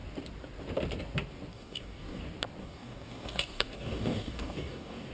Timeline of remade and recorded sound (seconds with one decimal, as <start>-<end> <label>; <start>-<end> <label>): 0.0-1.5 recorded; 1.5-2.2 remade; 2.2-2.6 recorded; 2.6-5.1 remade